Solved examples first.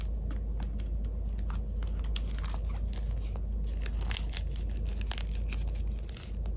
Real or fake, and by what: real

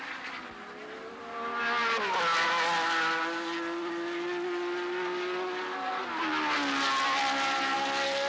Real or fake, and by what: real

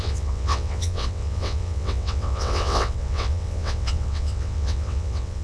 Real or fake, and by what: fake, vocoder, WaveNeXt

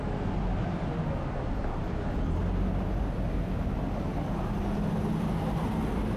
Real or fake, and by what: real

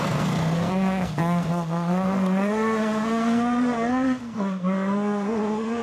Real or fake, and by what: fake, codec, SNAC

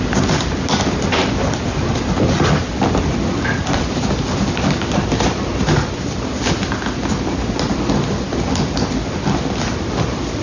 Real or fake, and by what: real